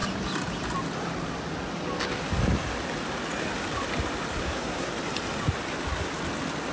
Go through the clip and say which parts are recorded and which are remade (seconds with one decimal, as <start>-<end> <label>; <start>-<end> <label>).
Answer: 0.0-4.4 recorded; 4.4-4.9 remade; 4.9-6.7 recorded